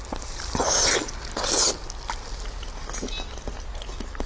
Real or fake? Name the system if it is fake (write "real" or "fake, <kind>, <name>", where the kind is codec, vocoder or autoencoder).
real